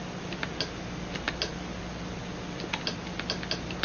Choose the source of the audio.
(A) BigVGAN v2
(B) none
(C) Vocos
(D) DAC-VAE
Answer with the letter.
B